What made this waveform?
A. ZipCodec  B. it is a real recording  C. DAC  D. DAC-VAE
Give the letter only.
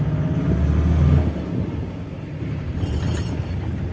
B